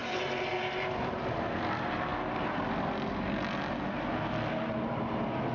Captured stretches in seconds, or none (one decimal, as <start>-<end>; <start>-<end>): 0.5-5.5